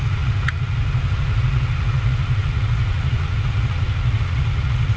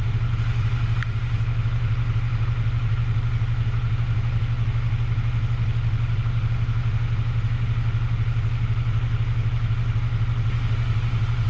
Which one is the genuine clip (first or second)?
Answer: second